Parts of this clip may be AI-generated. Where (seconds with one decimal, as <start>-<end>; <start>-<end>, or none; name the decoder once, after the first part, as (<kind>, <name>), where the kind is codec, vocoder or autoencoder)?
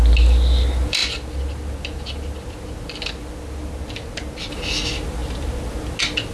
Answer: none